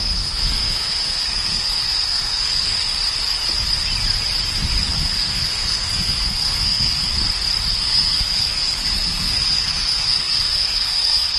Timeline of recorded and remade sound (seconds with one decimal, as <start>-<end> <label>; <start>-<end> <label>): 0.0-3.0 remade; 3.0-4.9 recorded; 4.9-7.1 remade; 7.1-7.7 recorded; 7.7-11.4 remade